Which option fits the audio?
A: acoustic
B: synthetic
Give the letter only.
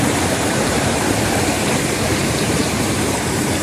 B